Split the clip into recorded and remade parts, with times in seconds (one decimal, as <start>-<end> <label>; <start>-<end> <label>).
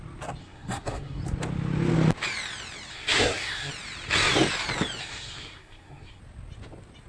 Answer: 0.0-0.4 recorded; 0.4-1.2 remade; 1.2-2.9 recorded; 2.9-3.7 remade; 3.7-5.0 recorded; 5.0-6.2 remade; 6.2-7.1 recorded